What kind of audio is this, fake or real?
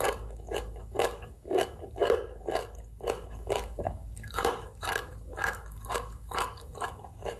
fake